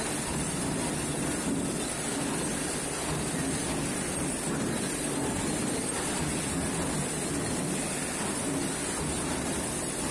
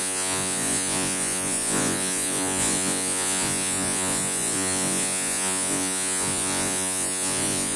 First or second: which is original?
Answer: first